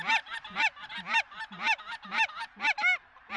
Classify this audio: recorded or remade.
recorded